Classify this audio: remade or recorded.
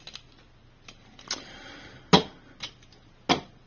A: recorded